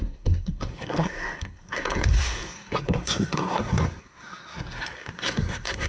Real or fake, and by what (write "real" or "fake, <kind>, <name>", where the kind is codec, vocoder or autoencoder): fake, codec, SNAC